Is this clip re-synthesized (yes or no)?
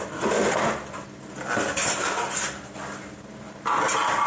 no